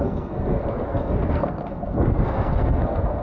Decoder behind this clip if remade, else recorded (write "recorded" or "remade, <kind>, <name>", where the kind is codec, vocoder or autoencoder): remade, codec, SNAC